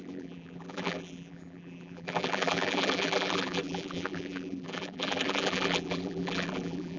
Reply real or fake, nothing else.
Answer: fake